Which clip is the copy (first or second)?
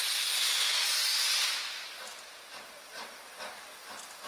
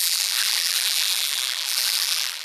second